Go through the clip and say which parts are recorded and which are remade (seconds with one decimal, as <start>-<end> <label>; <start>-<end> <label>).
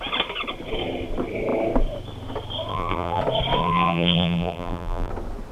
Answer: 0.0-2.7 recorded; 2.7-3.2 remade; 3.2-3.6 recorded; 3.6-5.1 remade; 5.1-5.5 recorded